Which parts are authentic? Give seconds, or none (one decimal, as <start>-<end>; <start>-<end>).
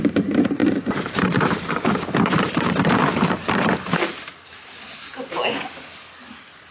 0.0-0.6; 4.6-6.7